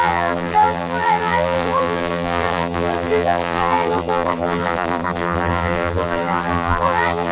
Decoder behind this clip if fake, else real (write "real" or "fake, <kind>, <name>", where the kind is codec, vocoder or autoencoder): fake, vocoder, BigVGAN v2